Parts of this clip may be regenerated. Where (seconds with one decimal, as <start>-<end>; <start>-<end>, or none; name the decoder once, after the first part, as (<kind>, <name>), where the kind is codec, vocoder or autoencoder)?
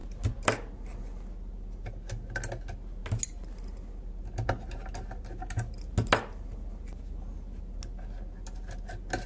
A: none